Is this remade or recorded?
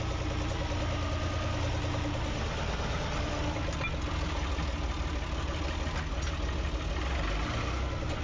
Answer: recorded